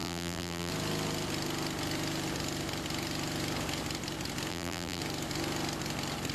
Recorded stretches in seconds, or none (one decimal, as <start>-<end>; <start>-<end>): 0.7-4.5; 5.0-6.3